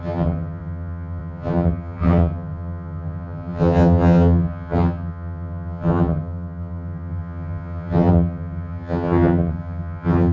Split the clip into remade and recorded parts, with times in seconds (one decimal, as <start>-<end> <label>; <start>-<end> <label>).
0.0-10.3 remade